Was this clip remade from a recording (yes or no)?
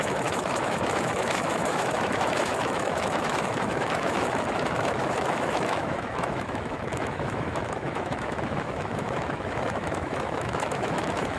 yes